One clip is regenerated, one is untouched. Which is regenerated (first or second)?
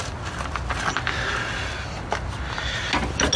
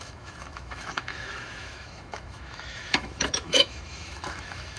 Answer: second